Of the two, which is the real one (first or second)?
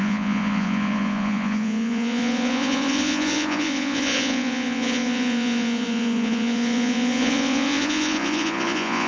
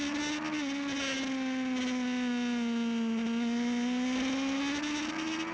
second